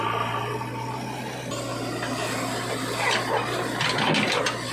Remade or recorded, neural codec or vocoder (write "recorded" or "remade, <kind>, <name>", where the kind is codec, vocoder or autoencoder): recorded